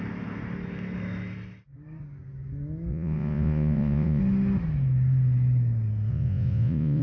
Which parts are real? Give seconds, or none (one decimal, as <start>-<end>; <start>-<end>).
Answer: 0.0-2.9; 4.2-6.1

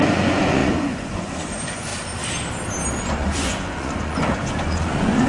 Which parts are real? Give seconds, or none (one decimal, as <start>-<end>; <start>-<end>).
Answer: 1.9-3.0

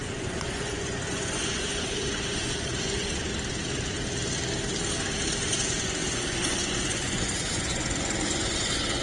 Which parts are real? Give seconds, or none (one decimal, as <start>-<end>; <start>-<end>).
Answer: 3.3-5.5

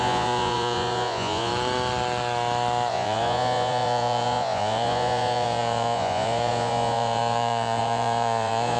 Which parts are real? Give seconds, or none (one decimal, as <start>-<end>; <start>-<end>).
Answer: 1.5-2.9